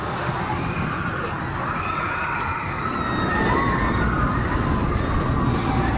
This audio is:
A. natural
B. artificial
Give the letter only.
A